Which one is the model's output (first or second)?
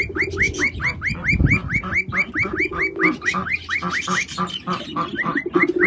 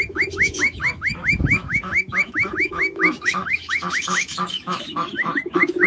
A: second